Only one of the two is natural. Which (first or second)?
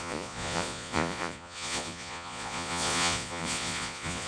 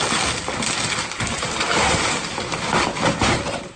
second